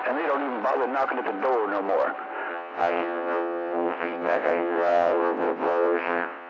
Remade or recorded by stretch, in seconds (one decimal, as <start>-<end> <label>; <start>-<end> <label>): 0.0-2.5 recorded; 2.5-6.5 remade